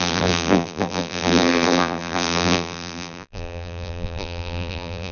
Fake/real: fake